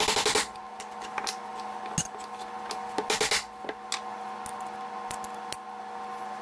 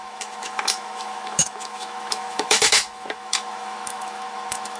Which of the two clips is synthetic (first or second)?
second